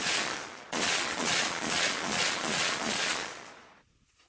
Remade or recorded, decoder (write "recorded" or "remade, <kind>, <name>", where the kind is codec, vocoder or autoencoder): remade, vocoder, Vocos